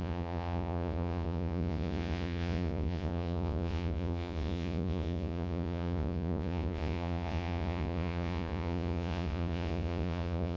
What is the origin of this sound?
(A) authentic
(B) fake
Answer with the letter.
B